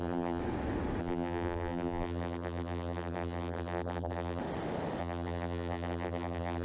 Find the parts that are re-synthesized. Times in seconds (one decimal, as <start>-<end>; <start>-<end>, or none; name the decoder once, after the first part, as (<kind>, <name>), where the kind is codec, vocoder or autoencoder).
0.0-0.4 (vocoder, BigVGAN v2); 1.0-4.4; 5.0-6.6